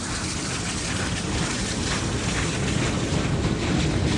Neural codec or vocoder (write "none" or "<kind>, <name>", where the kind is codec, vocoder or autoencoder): none